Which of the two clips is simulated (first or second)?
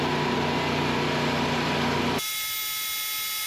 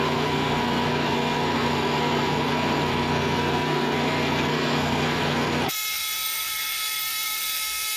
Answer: second